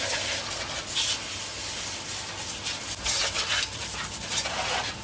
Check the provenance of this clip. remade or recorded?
recorded